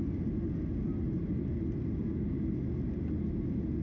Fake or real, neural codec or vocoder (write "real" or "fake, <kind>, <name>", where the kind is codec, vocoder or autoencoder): real